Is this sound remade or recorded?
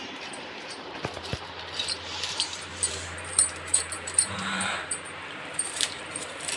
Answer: remade